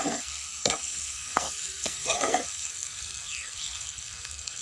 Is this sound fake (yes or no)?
yes